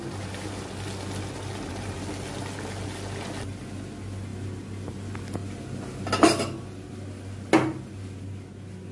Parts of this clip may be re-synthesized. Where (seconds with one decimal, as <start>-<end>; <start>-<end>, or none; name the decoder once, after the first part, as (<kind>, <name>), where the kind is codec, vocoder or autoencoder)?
none